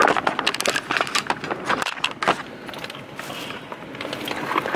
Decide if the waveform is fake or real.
real